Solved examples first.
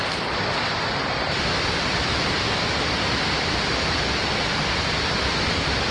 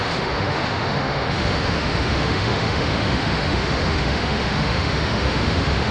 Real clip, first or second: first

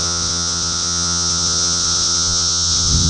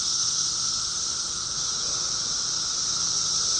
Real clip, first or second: second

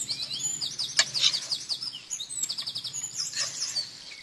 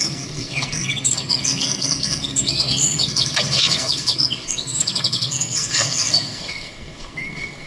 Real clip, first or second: first